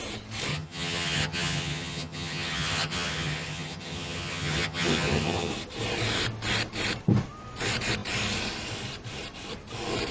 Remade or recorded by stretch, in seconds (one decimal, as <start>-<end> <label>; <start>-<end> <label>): 0.0-0.5 recorded; 0.5-5.5 remade; 5.5-10.1 recorded